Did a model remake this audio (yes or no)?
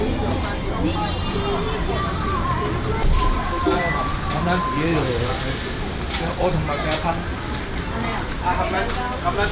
no